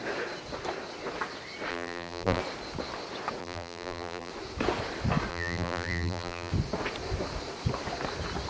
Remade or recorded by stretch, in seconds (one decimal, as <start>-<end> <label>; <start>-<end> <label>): 0.0-1.7 recorded; 1.7-2.4 remade; 2.4-3.4 recorded; 3.4-4.3 remade; 4.3-5.3 recorded; 5.3-6.5 remade; 6.5-8.5 recorded